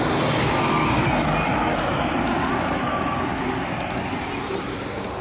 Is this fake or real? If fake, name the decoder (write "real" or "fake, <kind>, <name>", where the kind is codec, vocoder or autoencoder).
real